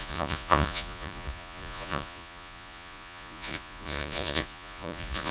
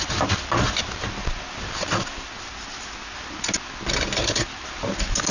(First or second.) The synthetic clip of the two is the first